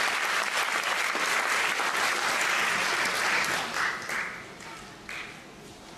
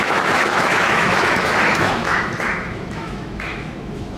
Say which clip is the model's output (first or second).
second